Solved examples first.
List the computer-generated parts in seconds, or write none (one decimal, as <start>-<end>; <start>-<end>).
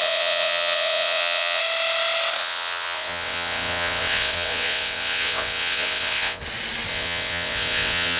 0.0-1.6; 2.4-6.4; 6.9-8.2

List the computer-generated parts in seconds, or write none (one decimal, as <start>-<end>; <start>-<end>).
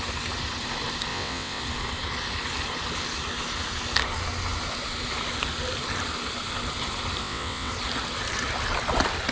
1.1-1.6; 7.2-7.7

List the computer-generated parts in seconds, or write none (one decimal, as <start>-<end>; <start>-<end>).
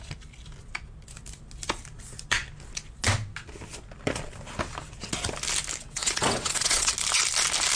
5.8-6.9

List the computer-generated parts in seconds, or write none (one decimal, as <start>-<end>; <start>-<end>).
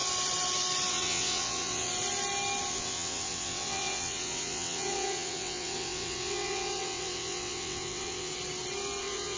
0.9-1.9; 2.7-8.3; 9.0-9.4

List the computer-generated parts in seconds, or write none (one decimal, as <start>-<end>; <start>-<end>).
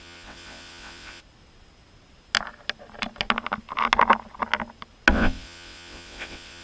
0.0-1.2; 5.1-6.6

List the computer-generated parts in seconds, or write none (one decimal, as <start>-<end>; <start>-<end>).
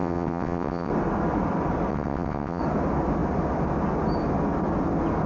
0.0-0.9; 1.9-2.6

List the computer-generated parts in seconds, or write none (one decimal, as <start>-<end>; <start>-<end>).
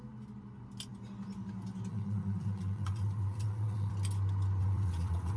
1.9-3.9; 4.6-5.4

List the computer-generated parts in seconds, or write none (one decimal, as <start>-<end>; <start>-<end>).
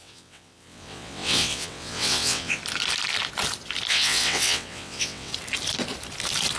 0.0-2.6; 3.9-5.3